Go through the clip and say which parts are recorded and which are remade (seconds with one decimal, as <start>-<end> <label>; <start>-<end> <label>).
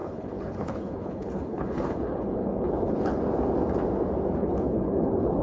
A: 0.0-3.2 remade; 3.2-4.4 recorded; 4.4-5.4 remade